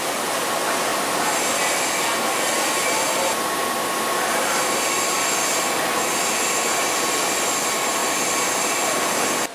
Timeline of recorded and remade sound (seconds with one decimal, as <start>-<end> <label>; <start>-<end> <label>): 0.0-9.5 recorded